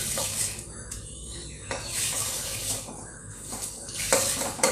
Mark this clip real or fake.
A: fake